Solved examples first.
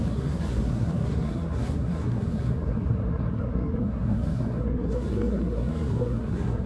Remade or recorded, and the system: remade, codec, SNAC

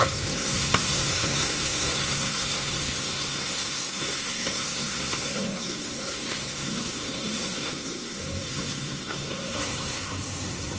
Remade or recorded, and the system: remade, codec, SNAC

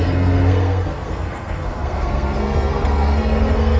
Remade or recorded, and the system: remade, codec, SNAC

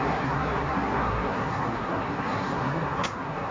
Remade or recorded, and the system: remade, codec, SNAC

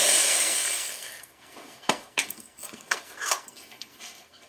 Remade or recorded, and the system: remade, codec, SNAC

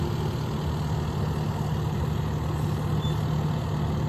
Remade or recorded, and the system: recorded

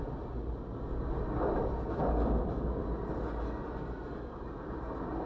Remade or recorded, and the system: recorded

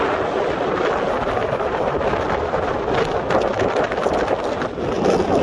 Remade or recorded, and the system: recorded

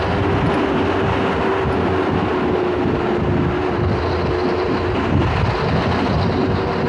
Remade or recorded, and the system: recorded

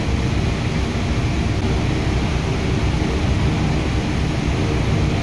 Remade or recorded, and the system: recorded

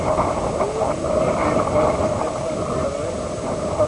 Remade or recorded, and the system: recorded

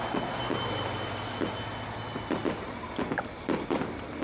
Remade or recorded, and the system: recorded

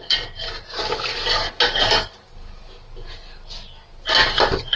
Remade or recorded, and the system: recorded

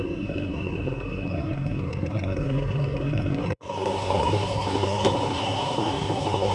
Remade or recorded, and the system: remade, codec, SNAC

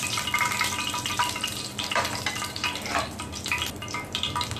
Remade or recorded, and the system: recorded